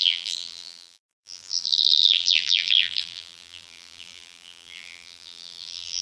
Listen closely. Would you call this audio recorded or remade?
remade